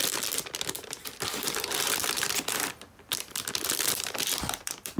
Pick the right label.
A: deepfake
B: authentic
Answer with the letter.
A